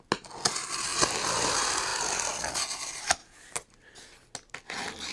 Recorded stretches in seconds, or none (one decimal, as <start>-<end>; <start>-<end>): 0.0-3.2; 3.9-5.1